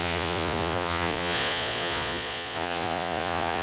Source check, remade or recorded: remade